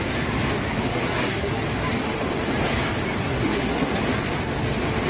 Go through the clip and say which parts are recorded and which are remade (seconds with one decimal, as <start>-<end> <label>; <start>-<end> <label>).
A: 0.0-0.9 recorded; 0.9-1.5 remade; 1.5-3.2 recorded; 3.2-4.0 remade; 4.0-5.1 recorded